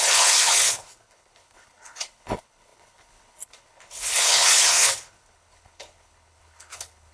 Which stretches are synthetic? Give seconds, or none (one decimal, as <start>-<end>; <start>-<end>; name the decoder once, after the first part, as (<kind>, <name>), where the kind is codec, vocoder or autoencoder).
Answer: 0.0-7.1 (codec, HILCodec)